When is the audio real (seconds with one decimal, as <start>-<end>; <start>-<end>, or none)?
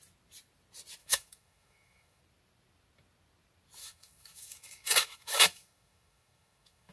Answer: 0.0-1.0; 2.2-3.8